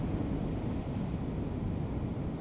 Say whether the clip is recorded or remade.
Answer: recorded